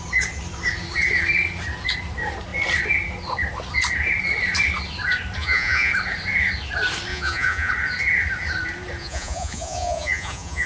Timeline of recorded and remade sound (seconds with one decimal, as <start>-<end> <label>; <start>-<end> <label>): 0.0-5.4 recorded; 5.4-5.9 remade; 5.9-7.1 recorded; 7.1-7.7 remade; 7.7-9.0 recorded; 9.0-10.7 remade